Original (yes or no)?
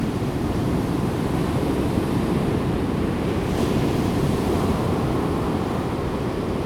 yes